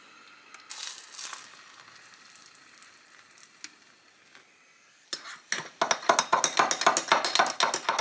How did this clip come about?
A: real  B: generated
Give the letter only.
A